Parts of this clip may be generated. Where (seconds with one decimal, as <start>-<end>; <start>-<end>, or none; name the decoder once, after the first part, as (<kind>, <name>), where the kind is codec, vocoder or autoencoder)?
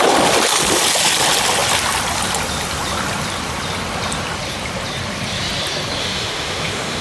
6.0-7.0 (autoencoder, DAC-VAE)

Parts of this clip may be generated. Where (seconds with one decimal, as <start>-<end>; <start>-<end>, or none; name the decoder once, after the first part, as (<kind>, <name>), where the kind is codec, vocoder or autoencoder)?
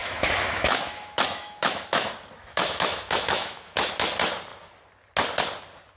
0.0-2.1 (autoencoder, DAC-VAE); 2.5-3.9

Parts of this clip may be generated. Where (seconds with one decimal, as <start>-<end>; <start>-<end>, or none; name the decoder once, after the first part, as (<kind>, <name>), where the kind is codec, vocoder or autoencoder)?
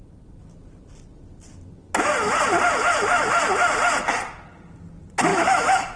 5.3-6.0 (autoencoder, DAC-VAE)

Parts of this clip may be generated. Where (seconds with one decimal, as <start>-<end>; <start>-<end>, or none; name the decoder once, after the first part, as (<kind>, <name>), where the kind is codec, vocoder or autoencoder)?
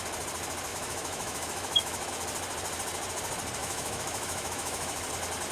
0.7-2.1 (autoencoder, DAC-VAE); 3.6-5.1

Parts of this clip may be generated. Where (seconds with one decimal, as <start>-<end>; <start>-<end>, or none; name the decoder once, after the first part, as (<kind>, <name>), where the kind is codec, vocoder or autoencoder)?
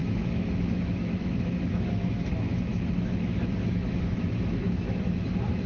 0.0-5.7 (autoencoder, DAC-VAE)